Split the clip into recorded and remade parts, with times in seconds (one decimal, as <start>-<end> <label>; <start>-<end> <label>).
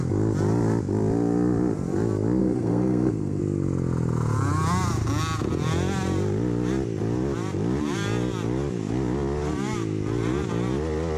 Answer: 0.0-2.4 recorded; 2.4-3.4 remade; 3.4-11.2 recorded